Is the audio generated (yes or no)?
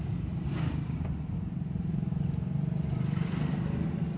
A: no